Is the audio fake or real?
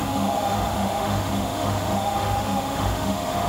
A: fake